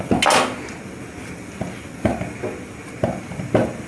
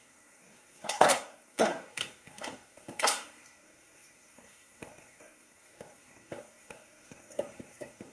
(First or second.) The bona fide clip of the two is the first